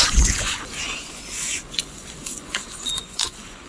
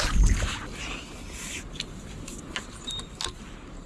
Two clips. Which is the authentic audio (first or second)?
second